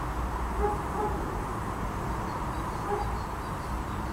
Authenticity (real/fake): fake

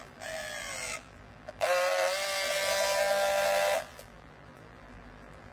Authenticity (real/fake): fake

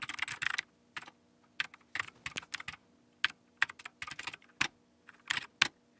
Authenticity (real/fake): real